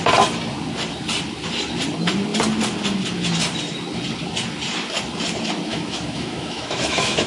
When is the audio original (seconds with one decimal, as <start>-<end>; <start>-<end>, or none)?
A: 0.0-5.7